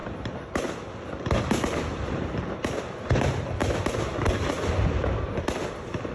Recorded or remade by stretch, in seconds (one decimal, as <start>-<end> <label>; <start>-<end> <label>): 0.0-6.1 recorded